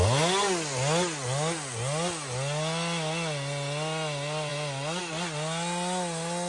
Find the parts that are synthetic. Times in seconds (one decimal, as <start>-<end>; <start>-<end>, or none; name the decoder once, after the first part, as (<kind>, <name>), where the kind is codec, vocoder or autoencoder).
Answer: 4.5-5.0 (vocoder, BigVGAN v2)